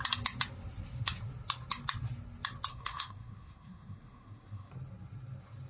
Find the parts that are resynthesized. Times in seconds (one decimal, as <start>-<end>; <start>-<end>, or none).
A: 2.7-4.7